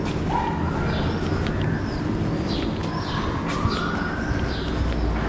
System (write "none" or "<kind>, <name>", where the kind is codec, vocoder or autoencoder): none